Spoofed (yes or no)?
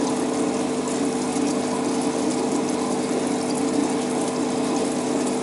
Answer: no